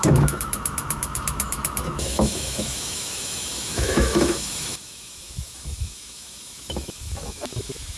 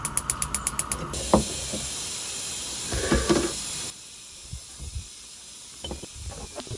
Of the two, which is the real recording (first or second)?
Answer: second